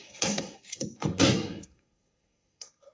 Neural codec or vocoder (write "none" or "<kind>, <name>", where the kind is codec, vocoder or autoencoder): codec, SNAC